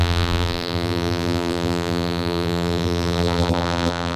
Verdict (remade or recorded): remade